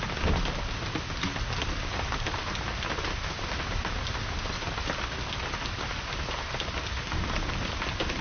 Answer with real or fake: real